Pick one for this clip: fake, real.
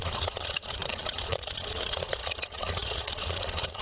fake